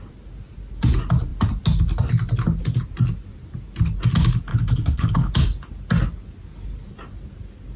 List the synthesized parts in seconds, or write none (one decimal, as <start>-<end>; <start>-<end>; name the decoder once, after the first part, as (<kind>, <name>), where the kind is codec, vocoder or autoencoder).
4.5-5.3 (codec, HILCodec)